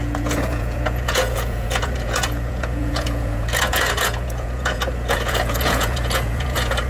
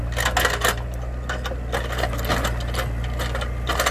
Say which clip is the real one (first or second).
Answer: second